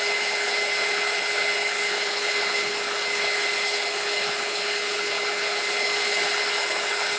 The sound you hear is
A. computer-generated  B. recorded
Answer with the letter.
A